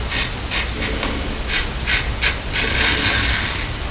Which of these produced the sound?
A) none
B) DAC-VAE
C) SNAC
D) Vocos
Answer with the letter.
A